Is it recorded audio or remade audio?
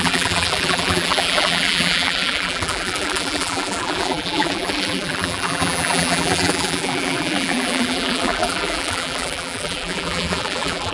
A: remade